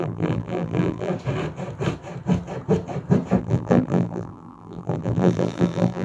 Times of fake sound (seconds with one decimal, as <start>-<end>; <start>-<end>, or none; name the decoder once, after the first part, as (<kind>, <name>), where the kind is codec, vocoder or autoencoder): 0.0-1.1 (vocoder, BigVGAN v2); 3.4-6.0